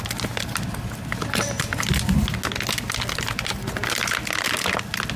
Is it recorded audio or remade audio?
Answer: recorded